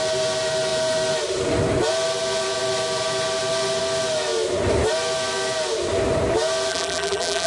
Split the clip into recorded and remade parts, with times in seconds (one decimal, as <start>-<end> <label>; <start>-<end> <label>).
0.0-6.7 recorded; 6.7-7.5 remade